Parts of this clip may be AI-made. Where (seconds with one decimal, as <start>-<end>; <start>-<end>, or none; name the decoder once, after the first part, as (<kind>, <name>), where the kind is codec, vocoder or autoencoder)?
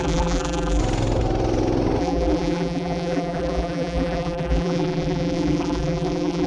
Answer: 0.0-0.8 (vocoder, BigVGAN v2); 2.0-6.5